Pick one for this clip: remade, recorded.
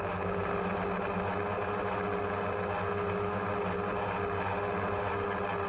recorded